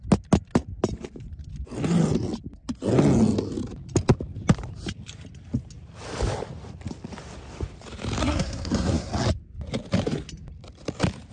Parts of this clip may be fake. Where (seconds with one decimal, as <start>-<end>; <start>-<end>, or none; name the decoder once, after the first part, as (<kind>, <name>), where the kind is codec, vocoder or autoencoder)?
8.2-9.1 (codec, SNAC)

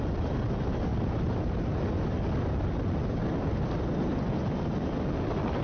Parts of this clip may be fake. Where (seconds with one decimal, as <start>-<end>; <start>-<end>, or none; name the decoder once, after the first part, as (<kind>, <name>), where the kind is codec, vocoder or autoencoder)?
none

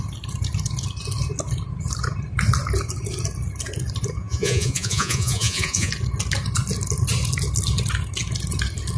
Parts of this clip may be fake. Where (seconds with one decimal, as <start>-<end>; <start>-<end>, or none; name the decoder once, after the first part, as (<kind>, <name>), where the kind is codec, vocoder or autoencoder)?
4.2-5.9 (vocoder, Vocos)

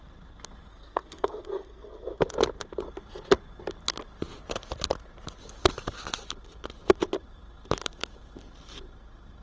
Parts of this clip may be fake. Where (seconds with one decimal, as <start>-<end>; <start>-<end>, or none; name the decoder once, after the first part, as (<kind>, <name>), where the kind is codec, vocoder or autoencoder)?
0.7-2.2 (codec, SNAC)